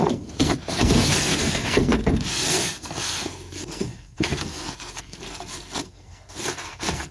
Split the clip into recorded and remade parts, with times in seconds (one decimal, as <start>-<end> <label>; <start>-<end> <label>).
0.0-7.1 remade